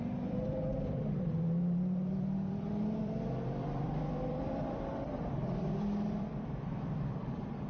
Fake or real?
fake